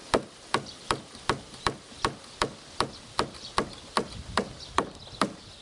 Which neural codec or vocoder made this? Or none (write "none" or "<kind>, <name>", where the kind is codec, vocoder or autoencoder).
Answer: none